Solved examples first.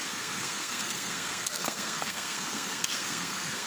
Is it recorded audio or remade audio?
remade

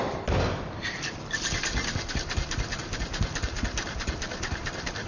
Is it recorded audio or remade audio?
recorded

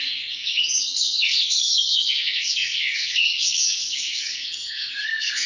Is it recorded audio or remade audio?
remade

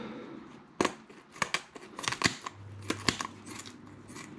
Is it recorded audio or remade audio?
recorded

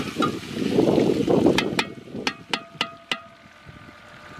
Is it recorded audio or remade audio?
recorded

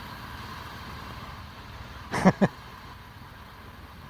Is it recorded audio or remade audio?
recorded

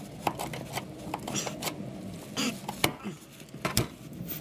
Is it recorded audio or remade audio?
recorded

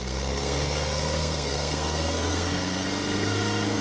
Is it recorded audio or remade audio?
remade